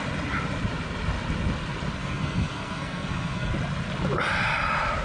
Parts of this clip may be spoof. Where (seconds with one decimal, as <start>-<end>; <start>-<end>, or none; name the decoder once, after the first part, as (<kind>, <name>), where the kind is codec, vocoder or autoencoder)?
2.0-3.5 (codec, SNAC)